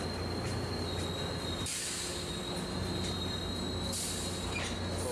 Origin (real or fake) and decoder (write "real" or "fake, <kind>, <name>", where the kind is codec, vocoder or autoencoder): real